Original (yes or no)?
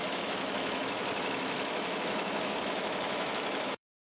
no